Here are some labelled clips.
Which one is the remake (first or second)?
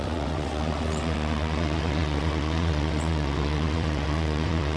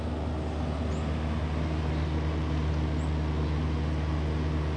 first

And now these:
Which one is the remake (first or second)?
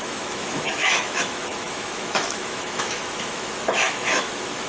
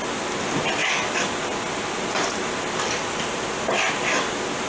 first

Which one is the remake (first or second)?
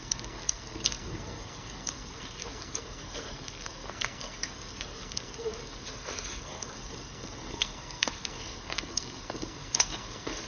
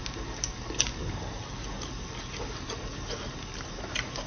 first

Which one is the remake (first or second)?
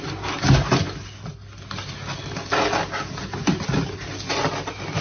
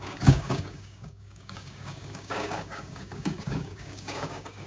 second